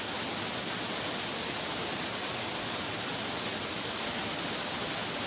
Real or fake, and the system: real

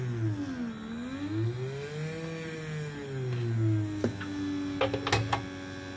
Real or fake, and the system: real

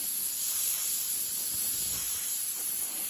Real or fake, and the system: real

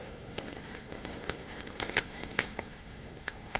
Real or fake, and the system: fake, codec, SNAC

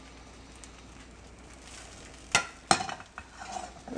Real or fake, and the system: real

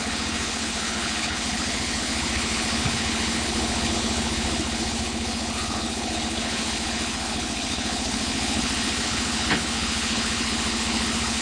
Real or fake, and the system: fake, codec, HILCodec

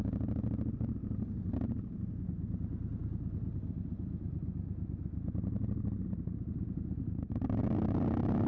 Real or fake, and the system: real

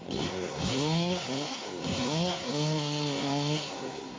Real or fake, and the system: fake, codec, SNAC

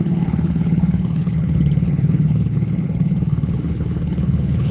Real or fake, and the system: fake, codec, HILCodec